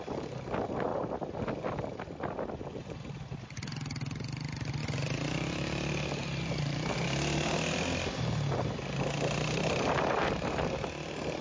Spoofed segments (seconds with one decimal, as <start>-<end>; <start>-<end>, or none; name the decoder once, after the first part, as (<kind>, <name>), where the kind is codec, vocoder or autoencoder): none